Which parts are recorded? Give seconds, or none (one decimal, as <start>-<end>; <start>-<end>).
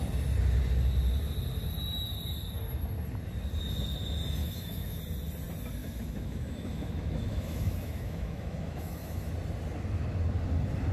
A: 0.0-4.4; 5.0-5.8; 9.3-10.9